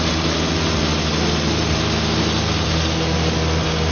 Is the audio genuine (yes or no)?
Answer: yes